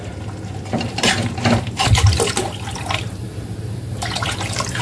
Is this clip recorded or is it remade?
remade